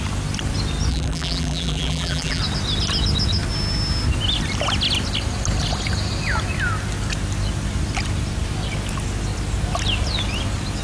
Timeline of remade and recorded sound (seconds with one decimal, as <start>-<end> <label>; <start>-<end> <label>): 0.0-0.9 recorded; 0.9-2.4 remade; 2.4-10.8 recorded